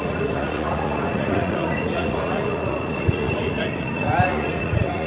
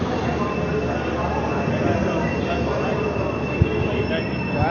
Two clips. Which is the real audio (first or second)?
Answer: second